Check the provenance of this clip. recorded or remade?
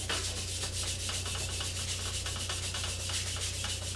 recorded